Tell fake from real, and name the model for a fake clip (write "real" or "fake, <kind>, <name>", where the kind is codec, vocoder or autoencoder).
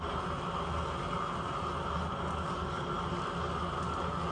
real